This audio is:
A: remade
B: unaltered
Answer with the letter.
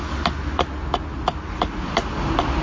B